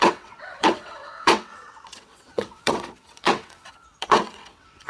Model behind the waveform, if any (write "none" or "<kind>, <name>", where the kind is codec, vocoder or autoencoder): vocoder, WaveNeXt